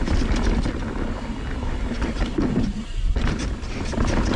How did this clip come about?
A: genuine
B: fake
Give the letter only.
A